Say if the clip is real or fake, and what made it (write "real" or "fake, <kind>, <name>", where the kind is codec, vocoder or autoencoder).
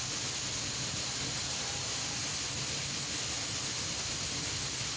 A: real